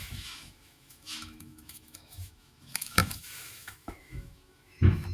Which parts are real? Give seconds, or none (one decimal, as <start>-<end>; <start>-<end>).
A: none